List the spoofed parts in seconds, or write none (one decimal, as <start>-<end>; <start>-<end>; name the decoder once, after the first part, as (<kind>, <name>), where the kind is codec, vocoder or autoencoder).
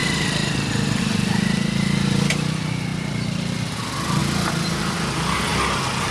none